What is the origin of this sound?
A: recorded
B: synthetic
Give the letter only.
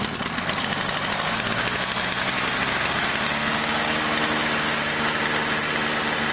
A